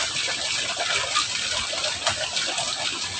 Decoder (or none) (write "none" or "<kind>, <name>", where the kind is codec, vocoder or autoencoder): none